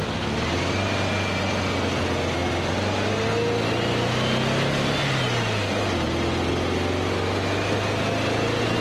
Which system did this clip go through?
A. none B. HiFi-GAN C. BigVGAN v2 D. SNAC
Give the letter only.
A